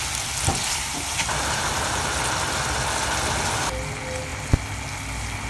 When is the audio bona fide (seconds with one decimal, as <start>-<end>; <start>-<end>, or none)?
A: 0.0-0.6; 2.0-5.5